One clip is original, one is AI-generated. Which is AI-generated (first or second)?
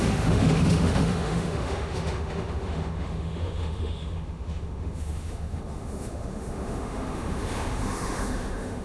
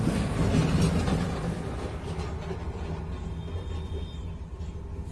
first